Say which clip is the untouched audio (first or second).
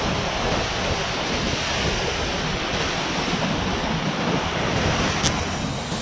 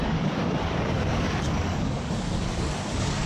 first